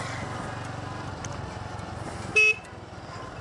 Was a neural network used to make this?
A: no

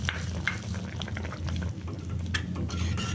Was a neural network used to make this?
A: no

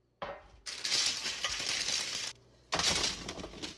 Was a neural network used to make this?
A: no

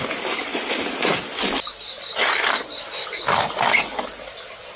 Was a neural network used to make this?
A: no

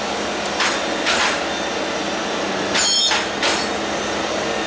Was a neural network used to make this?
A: no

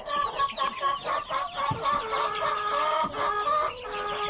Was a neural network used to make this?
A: no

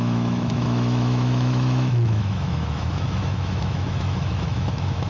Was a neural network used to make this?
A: yes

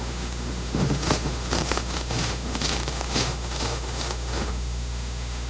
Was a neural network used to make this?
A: yes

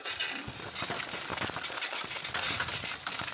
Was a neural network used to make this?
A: no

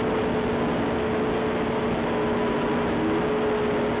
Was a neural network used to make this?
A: no